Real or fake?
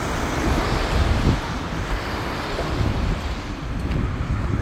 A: real